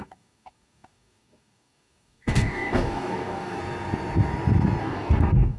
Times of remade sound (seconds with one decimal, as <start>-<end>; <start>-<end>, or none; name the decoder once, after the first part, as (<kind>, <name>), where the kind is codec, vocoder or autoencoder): 0.0-3.6 (codec, DAC); 4.8-5.6